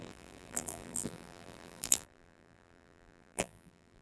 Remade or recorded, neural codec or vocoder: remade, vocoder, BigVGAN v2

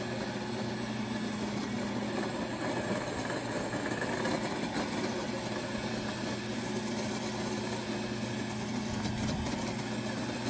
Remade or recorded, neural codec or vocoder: recorded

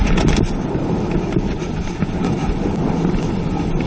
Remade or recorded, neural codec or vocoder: recorded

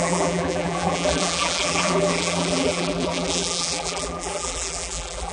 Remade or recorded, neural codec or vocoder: remade, vocoder, BigVGAN v2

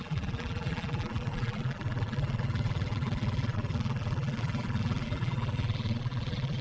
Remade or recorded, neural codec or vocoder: remade, vocoder, BigVGAN v2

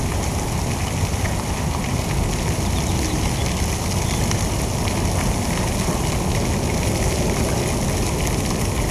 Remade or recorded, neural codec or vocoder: recorded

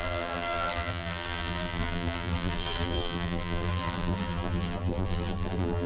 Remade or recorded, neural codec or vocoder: remade, vocoder, BigVGAN v2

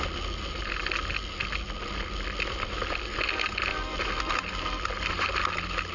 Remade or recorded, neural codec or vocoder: recorded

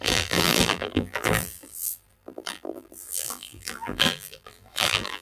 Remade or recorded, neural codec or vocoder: remade, vocoder, BigVGAN v2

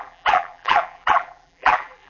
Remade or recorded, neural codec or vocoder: remade, vocoder, BigVGAN v2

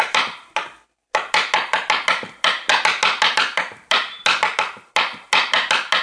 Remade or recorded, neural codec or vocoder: recorded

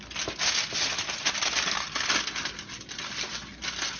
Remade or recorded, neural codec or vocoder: recorded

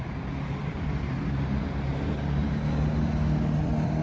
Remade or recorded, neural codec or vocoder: recorded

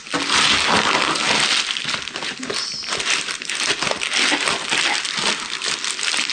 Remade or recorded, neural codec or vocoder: recorded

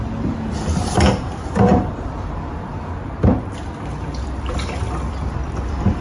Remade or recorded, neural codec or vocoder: remade, vocoder, BigVGAN v2